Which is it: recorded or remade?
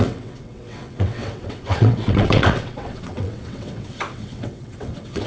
remade